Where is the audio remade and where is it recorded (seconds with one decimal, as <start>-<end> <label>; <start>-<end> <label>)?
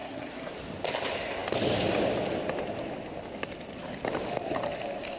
0.0-0.5 remade; 0.5-5.2 recorded